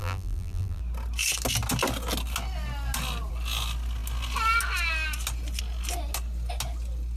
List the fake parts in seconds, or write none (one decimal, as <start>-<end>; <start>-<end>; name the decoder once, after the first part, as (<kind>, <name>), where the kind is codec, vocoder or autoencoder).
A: 0.0-0.8 (vocoder, BigVGAN v2)